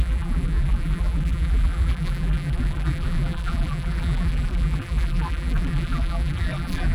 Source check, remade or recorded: remade